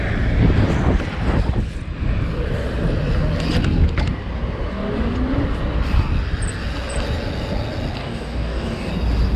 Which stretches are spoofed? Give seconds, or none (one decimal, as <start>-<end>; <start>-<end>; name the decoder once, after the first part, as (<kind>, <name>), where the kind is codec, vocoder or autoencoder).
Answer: 8.0-8.9 (codec, DAC)